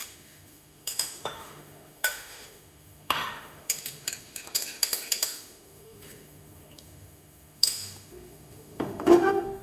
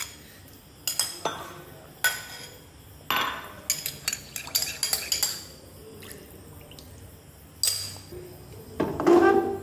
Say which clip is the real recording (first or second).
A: second